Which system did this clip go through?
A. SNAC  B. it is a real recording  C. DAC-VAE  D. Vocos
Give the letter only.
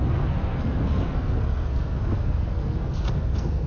A